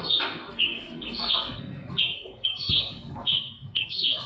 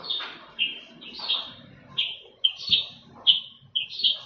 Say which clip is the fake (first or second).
first